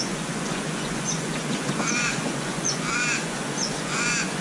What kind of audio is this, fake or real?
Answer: fake